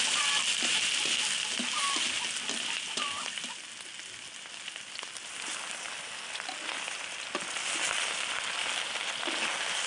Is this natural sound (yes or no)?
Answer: yes